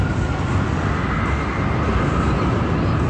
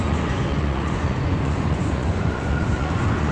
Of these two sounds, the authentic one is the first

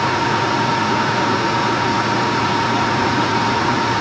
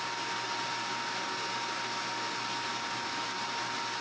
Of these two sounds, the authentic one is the second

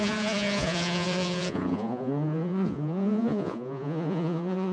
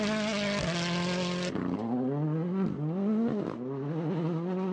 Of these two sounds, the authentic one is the second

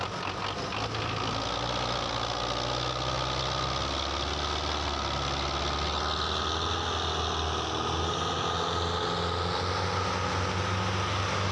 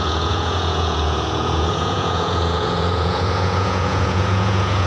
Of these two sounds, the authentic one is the first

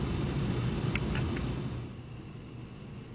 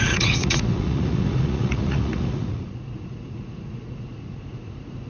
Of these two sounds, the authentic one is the first